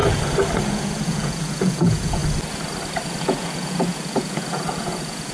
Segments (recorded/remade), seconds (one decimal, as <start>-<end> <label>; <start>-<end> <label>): 0.0-0.6 recorded; 0.6-2.2 remade; 2.2-3.2 recorded; 3.2-5.3 remade